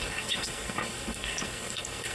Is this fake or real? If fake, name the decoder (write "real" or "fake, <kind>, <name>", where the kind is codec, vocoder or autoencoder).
fake, codec, SNAC